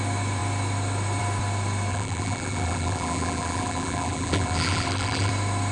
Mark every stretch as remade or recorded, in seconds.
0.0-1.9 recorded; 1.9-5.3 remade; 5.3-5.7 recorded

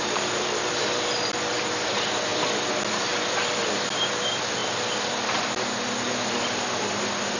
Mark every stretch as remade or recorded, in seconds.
0.0-7.4 recorded

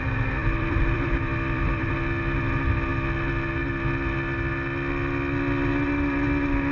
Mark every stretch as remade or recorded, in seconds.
0.0-0.4 recorded; 0.4-1.9 remade; 1.9-6.7 recorded

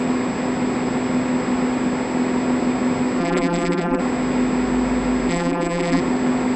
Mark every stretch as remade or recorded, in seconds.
0.0-3.2 recorded; 3.2-4.0 remade; 4.0-5.3 recorded; 5.3-6.0 remade; 6.0-6.6 recorded